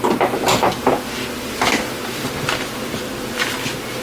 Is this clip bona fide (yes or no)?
yes